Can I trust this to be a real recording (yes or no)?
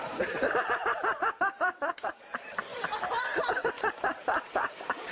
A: no